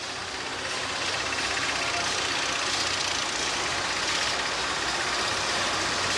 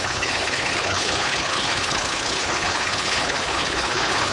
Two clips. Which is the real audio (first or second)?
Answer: first